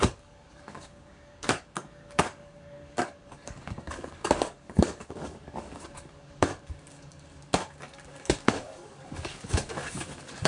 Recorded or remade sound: remade